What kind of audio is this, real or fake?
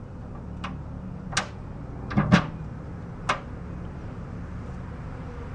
real